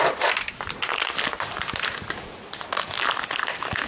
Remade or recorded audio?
recorded